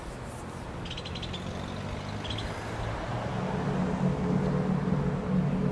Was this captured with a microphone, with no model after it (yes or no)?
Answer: yes